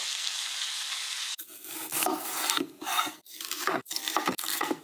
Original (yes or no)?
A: no